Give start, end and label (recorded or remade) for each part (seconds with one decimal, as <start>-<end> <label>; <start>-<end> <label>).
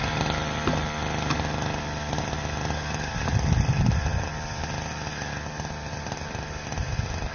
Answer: 0.0-7.3 recorded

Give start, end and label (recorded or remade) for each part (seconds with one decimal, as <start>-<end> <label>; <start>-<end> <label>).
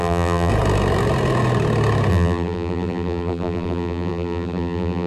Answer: 0.0-0.5 remade; 0.5-2.1 recorded; 2.1-5.1 remade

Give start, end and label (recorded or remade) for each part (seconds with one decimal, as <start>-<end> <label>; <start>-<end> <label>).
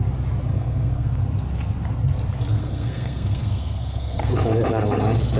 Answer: 0.0-0.5 recorded; 0.5-1.2 remade; 1.2-2.5 recorded; 2.5-4.3 remade; 4.3-5.4 recorded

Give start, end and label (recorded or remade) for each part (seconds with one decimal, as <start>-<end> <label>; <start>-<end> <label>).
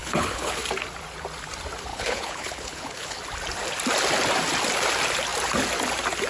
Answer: 0.0-0.6 remade; 0.6-1.9 recorded; 1.9-3.2 remade; 3.2-6.3 recorded